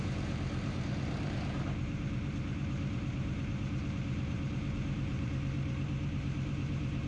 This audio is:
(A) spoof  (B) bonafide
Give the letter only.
A